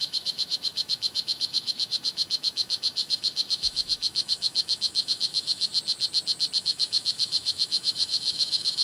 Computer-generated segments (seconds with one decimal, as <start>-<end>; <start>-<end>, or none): 0.0-5.7; 6.6-8.8